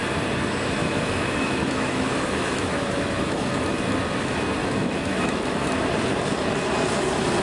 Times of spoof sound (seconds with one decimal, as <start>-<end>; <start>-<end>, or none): 0.8-3.8; 4.6-5.7